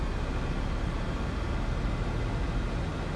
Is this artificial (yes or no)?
no